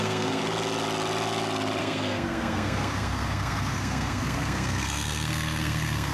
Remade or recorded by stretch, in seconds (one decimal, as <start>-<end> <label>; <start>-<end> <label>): 0.0-0.4 remade; 0.4-1.8 recorded; 1.8-6.1 remade